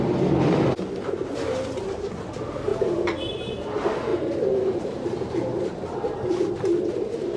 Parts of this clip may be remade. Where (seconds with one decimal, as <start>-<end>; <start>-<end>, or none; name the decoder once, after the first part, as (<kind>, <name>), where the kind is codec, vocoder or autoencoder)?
2.7-3.5 (vocoder, BigVGAN v2); 4.1-6.5